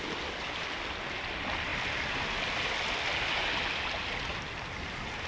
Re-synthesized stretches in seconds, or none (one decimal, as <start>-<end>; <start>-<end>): none